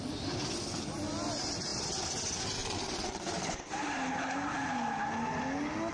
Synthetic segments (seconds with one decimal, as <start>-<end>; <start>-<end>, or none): 2.6-4.5